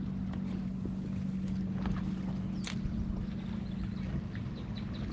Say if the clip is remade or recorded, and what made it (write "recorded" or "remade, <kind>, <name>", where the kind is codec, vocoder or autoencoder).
recorded